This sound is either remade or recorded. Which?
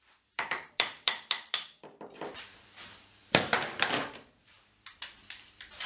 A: remade